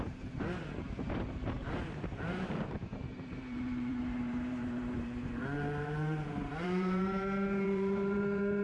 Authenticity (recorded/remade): remade